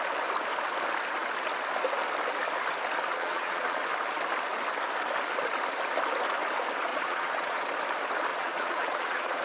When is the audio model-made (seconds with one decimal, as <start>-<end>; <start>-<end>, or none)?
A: 3.1-3.8; 6.9-7.6; 8.3-9.4